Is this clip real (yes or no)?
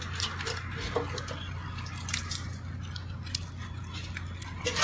yes